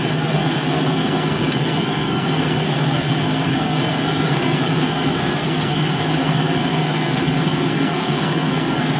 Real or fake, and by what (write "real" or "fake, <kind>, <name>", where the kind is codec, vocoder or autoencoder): fake, codec, SNAC